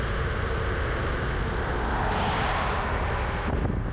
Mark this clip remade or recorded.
recorded